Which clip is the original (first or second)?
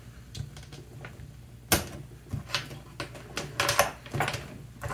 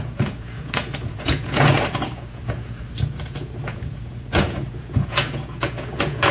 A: first